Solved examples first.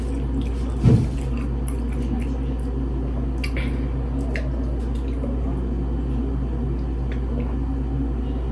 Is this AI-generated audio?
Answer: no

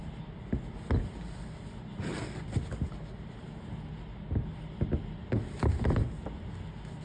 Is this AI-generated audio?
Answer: no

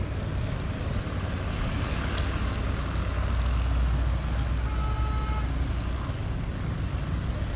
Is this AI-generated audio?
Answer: no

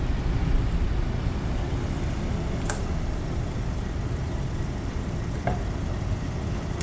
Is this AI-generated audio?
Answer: no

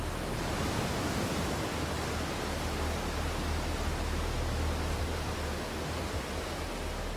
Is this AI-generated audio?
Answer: no